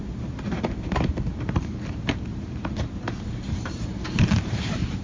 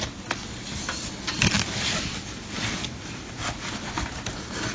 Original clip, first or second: second